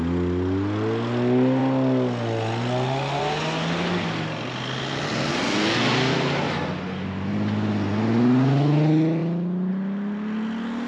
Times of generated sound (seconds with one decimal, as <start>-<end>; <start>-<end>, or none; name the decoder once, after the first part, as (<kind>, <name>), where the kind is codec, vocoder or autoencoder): none